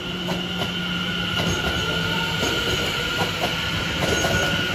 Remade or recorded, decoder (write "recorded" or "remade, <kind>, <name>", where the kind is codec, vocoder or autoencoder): recorded